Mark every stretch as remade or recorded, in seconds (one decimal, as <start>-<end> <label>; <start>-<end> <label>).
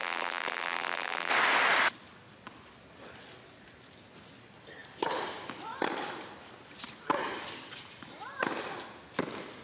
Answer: 0.0-1.3 remade; 1.3-9.6 recorded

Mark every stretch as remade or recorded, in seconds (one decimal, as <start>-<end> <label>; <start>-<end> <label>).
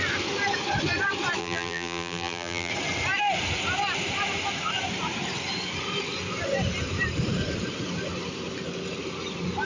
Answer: 0.0-1.4 recorded; 1.4-2.7 remade; 2.7-9.6 recorded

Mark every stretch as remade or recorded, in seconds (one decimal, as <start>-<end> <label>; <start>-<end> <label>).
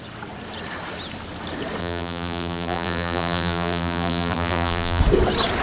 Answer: 0.0-1.8 recorded; 1.8-5.0 remade; 5.0-5.6 recorded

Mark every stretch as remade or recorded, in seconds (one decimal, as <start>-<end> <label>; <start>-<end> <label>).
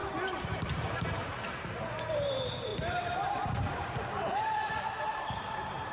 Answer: 0.0-2.1 recorded; 2.1-5.9 remade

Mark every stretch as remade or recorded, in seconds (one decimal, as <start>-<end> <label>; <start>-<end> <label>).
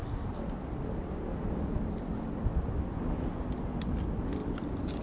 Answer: 0.0-4.4 recorded; 4.4-5.0 remade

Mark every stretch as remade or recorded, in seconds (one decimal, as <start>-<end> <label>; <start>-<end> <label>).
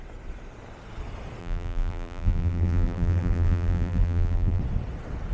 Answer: 0.0-1.4 recorded; 1.4-4.6 remade; 4.6-5.3 recorded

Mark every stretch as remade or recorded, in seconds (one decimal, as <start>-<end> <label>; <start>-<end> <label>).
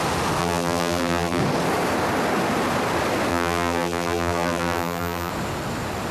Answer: 0.0-0.4 recorded; 0.4-1.4 remade; 1.4-3.3 recorded; 3.3-5.3 remade; 5.3-6.1 recorded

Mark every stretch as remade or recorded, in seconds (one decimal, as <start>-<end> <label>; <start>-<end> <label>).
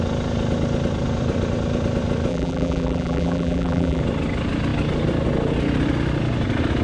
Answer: 0.0-2.3 recorded; 2.3-4.0 remade; 4.0-6.8 recorded